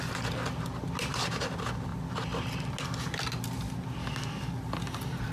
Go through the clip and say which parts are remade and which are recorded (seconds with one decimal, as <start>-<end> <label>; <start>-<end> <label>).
0.0-4.0 recorded; 4.0-4.6 remade; 4.6-5.3 recorded